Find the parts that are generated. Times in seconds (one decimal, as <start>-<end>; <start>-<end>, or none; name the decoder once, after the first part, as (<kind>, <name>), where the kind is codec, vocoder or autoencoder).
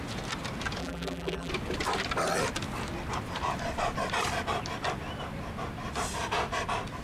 0.8-1.5 (vocoder, BigVGAN v2)